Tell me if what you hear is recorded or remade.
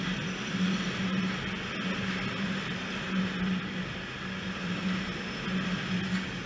recorded